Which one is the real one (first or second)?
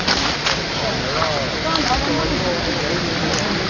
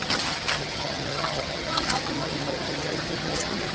first